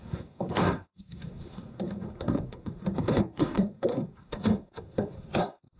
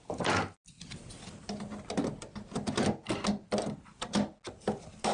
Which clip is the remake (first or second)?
first